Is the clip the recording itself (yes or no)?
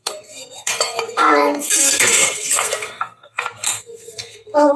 no